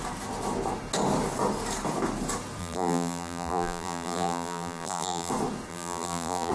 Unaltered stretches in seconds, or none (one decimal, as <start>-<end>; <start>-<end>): 0.0-2.6; 5.3-5.7

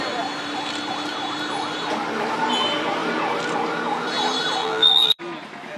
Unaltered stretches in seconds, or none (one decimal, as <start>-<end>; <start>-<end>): 0.0-4.6; 5.2-5.8

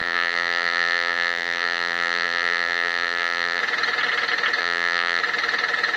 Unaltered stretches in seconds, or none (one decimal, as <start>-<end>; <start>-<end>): 3.6-4.6; 5.2-6.0